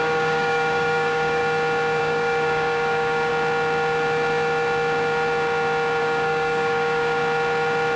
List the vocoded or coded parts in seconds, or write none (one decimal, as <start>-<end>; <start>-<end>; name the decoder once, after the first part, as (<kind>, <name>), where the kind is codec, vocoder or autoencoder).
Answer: 0.0-1.4 (codec, DAC); 2.0-3.3; 6.0-7.2